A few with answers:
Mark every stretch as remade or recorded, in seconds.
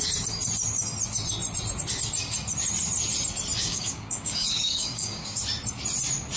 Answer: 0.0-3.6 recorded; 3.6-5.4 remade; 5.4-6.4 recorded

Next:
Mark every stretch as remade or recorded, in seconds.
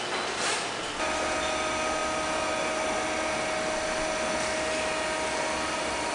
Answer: 0.0-6.1 recorded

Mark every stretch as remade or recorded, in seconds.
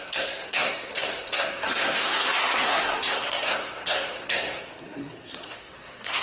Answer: 0.0-6.2 remade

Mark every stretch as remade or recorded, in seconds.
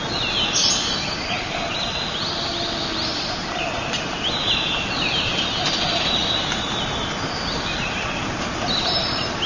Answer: 0.0-9.5 recorded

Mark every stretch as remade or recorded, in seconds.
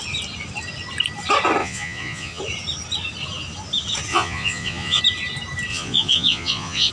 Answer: 0.0-1.6 recorded; 1.6-2.4 remade; 2.4-4.1 recorded; 4.1-5.0 remade; 5.0-5.7 recorded; 5.7-6.9 remade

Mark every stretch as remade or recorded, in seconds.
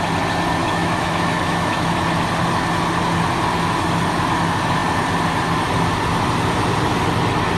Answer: 0.0-0.6 recorded; 0.6-1.9 remade; 1.9-7.6 recorded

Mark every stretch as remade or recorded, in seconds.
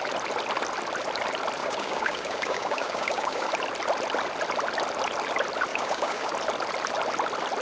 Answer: 0.0-1.6 recorded; 1.6-3.5 remade; 3.5-5.7 recorded; 5.7-6.3 remade; 6.3-7.6 recorded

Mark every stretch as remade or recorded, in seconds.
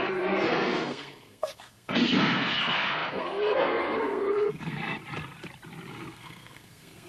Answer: 0.0-5.0 remade; 5.0-5.9 recorded; 5.9-7.1 remade